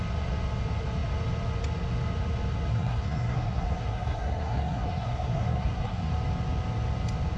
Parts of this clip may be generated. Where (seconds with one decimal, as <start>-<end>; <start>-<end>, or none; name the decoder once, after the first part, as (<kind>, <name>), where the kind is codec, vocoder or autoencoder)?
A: 2.7-6.1 (codec, SNAC)

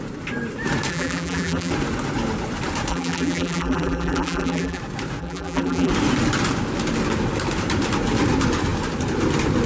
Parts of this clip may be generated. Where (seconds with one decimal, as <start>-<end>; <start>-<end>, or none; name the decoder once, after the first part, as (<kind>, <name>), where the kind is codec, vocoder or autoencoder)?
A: 0.9-1.7 (vocoder, BigVGAN v2); 2.9-4.8; 5.2-5.9

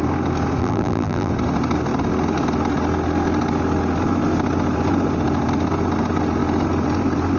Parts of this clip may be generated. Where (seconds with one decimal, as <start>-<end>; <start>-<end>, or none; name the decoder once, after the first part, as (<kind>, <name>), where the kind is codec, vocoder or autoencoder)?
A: 0.6-1.3 (vocoder, BigVGAN v2)

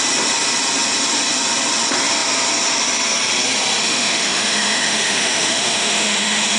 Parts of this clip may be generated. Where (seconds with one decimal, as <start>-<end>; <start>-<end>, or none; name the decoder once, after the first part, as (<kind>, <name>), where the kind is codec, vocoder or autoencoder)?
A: 3.8-6.6 (autoencoder, DAC-VAE)

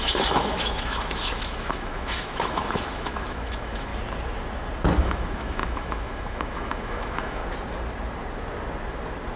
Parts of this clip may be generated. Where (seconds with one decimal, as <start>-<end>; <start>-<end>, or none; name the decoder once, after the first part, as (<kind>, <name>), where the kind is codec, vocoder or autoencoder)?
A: 0.0-3.9 (autoencoder, DAC-VAE); 5.0-7.4

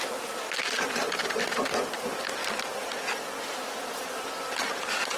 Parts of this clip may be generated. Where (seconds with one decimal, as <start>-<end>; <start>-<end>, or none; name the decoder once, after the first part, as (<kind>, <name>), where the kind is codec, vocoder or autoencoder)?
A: none

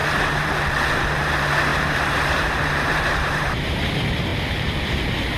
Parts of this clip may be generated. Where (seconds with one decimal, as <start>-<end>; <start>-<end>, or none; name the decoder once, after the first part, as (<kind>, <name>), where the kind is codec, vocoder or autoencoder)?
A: 0.0-0.5 (vocoder, BigVGAN v2); 1.7-3.9; 4.3-5.0

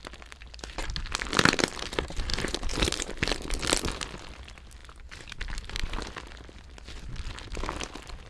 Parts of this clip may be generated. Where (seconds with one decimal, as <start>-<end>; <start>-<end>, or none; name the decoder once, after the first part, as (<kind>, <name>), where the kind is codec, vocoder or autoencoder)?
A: 2.3-3.1 (vocoder, BigVGAN v2); 4.8-6.0